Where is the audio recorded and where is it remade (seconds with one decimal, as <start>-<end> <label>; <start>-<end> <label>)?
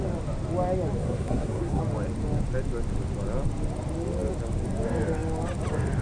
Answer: 0.0-1.0 recorded; 1.0-1.8 remade; 1.8-6.0 recorded